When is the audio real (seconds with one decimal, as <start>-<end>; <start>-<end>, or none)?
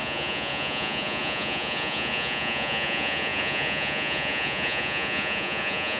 none